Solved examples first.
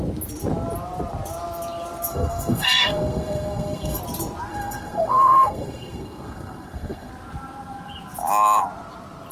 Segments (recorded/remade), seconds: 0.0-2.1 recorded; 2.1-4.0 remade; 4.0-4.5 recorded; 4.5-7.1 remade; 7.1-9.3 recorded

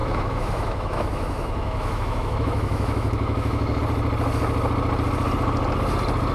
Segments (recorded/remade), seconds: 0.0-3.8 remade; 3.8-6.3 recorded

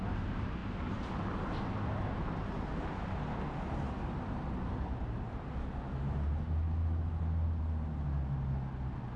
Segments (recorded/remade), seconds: 0.0-9.2 recorded

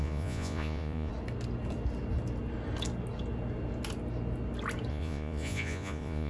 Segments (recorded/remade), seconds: 0.0-1.1 remade; 1.1-4.9 recorded; 4.9-6.3 remade

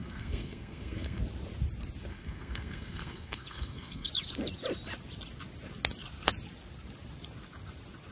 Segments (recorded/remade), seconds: 0.0-1.2 remade; 1.2-2.1 recorded; 2.1-4.1 remade; 4.1-8.1 recorded

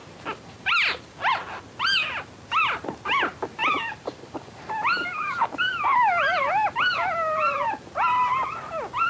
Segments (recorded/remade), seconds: 0.0-1.0 remade; 1.0-3.6 recorded; 3.6-5.6 remade; 5.6-6.6 recorded; 6.6-7.9 remade; 7.9-9.1 recorded

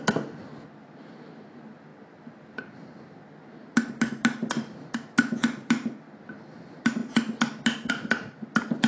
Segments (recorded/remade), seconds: 0.0-8.9 recorded

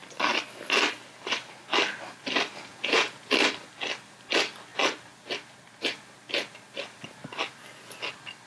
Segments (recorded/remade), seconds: 0.0-2.7 recorded; 2.7-3.3 remade; 3.3-8.5 recorded